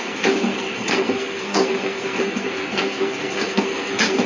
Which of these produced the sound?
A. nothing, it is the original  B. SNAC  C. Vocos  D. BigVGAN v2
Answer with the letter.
B